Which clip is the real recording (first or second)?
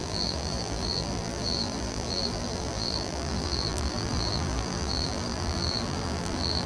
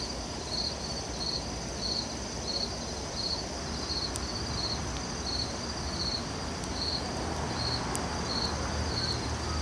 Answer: second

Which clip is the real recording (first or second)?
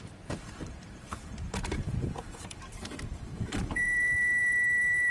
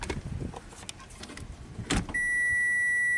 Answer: second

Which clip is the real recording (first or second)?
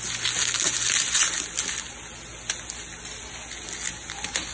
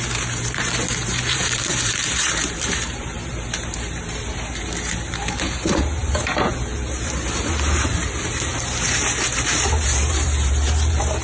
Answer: first